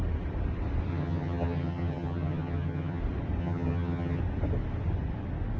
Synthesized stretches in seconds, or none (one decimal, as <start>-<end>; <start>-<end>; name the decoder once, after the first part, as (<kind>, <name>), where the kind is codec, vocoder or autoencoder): 0.9-3.0 (vocoder, HiFi-GAN); 3.4-4.2